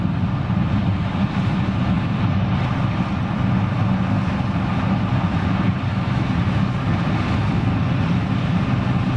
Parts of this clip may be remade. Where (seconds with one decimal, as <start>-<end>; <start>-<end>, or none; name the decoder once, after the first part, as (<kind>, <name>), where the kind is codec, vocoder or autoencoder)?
5.9-6.4 (autoencoder, DAC-VAE)